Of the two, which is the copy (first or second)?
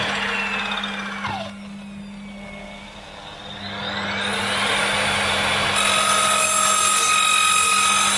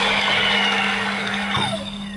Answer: second